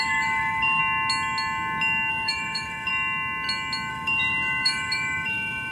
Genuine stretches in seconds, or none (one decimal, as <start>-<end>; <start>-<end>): 0.8-2.1; 2.9-3.9